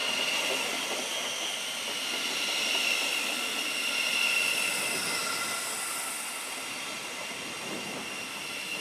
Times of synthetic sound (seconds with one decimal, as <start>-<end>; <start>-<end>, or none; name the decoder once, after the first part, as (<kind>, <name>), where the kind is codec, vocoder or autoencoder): none